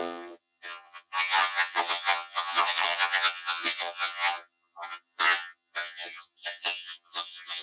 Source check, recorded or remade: remade